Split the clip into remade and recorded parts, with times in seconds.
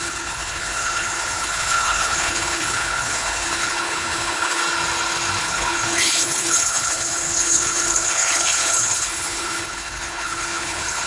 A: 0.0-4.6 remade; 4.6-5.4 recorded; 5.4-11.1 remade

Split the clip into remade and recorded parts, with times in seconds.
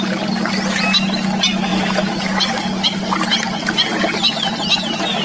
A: 0.0-5.2 recorded